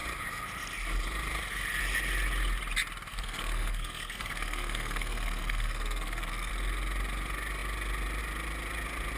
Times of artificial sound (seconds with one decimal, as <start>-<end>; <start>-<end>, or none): 3.1-6.5